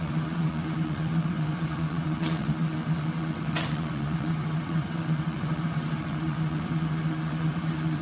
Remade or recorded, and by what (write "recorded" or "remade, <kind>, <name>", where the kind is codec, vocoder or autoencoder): remade, vocoder, WaveNeXt